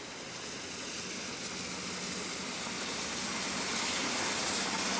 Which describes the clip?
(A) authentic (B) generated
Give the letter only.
A